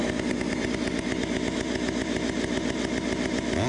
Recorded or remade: recorded